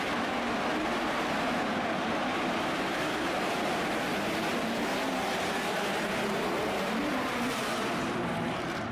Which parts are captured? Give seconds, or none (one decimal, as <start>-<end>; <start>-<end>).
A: none